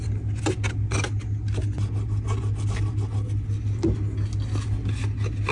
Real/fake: real